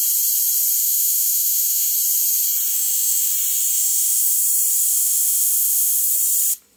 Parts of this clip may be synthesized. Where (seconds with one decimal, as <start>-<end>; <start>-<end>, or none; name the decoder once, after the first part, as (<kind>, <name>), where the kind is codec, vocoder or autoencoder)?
0.8-1.9 (autoencoder, DAC-VAE); 2.7-3.3; 3.7-4.4; 4.9-6.0